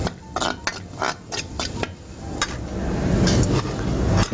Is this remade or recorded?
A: recorded